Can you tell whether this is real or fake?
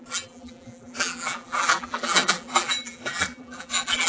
fake